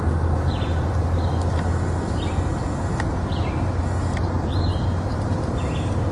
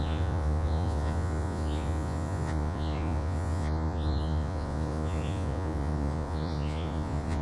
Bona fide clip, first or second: first